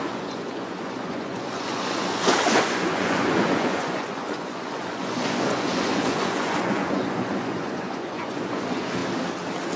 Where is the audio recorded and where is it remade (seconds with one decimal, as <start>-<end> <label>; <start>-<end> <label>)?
0.0-9.0 remade; 9.0-9.8 recorded

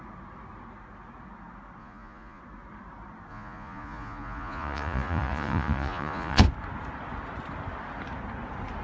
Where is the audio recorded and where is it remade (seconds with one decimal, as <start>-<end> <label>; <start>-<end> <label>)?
0.0-1.8 recorded; 1.8-2.4 remade; 2.4-3.3 recorded; 3.3-6.4 remade; 6.4-8.8 recorded

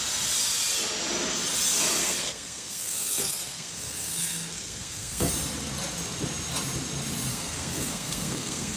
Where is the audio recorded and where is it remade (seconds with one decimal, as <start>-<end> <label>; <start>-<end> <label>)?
0.0-2.0 recorded; 2.0-5.3 remade; 5.3-7.3 recorded; 7.3-8.8 remade